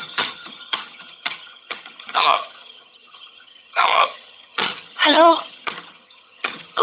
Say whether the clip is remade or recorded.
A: remade